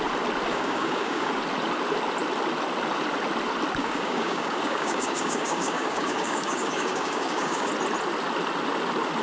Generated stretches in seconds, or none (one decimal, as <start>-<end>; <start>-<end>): 0.5-1.3; 3.8-7.7